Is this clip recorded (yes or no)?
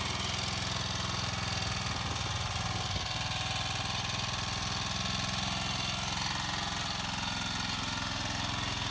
yes